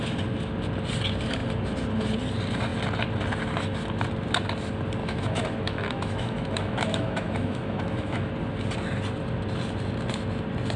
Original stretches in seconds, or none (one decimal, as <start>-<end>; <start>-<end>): 0.0-5.0; 8.3-10.8